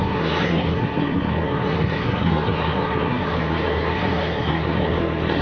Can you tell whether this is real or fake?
fake